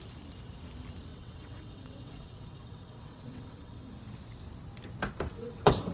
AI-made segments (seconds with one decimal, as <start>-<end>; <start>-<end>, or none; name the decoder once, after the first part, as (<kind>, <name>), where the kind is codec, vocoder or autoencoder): 1.1-3.9 (vocoder, WaveNeXt); 5.3-5.9